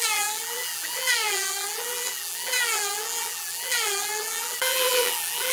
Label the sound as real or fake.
fake